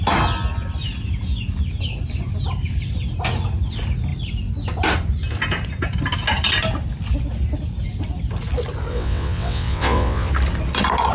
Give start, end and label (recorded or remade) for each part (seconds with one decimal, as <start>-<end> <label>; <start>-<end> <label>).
0.0-8.9 recorded; 8.9-10.3 remade; 10.3-11.1 recorded